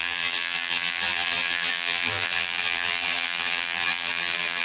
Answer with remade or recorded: remade